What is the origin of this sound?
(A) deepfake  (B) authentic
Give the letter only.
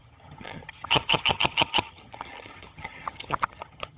A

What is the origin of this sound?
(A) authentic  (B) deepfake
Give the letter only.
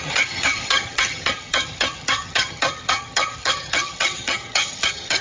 B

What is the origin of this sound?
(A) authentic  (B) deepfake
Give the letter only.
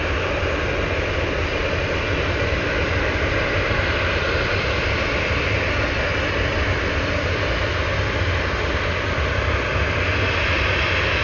A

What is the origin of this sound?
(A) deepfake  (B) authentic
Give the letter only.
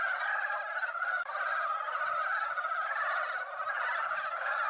B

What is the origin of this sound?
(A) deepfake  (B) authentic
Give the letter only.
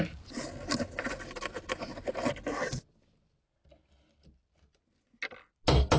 B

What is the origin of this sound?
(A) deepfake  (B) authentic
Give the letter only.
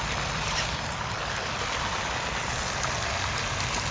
B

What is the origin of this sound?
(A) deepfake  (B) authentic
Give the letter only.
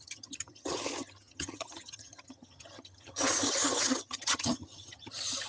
A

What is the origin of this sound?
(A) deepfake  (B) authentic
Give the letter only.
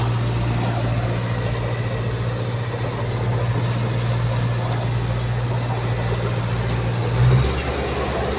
B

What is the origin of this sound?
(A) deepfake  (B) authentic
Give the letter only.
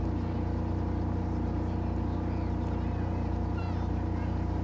B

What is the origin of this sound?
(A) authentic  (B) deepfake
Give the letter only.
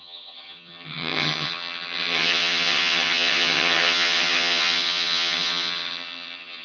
B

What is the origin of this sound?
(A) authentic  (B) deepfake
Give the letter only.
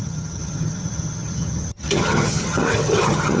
B